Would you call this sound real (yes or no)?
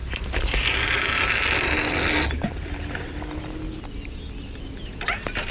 yes